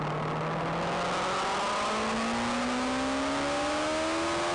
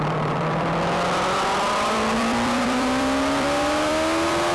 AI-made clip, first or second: second